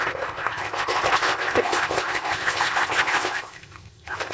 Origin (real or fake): fake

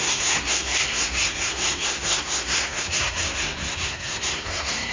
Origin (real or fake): fake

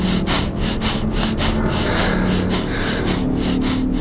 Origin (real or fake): real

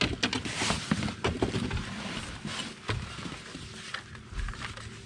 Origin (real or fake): real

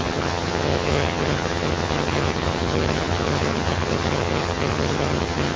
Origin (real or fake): fake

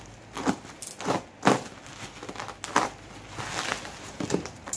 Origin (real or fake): real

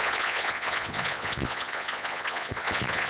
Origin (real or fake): fake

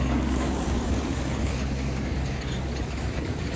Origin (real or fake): fake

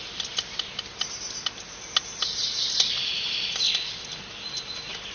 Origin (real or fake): real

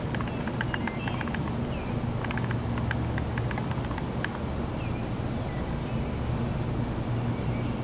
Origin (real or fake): real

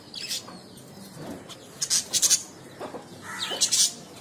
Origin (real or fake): real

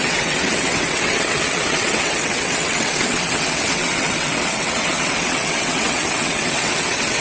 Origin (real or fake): fake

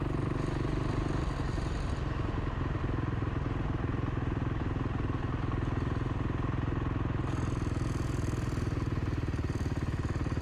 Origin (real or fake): real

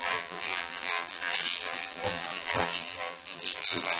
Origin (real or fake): fake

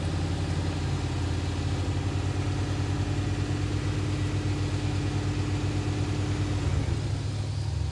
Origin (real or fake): real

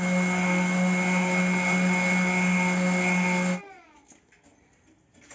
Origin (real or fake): real